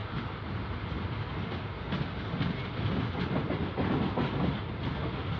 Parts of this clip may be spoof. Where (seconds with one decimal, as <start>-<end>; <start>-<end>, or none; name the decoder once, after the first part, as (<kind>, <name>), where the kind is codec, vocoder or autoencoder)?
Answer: none

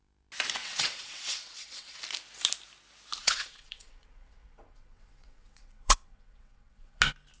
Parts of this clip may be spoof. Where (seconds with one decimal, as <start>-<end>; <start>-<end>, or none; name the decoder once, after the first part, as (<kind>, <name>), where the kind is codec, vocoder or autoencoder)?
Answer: 0.6-2.0 (vocoder, WaveNeXt); 3.2-7.0